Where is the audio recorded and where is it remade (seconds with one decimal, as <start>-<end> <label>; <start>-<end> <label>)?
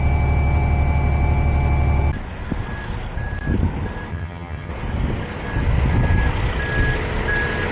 0.0-4.1 recorded; 4.1-4.7 remade; 4.7-7.7 recorded